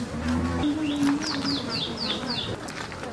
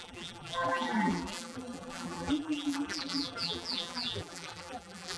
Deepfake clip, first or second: second